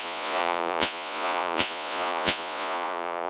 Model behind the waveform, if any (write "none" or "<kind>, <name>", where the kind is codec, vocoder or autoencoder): vocoder, Vocos